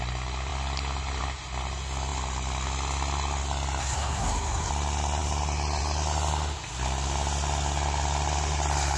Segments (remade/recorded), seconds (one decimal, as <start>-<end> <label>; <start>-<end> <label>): 0.0-3.8 recorded; 3.8-4.7 remade; 4.7-9.0 recorded